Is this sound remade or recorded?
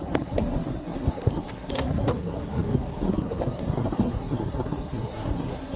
remade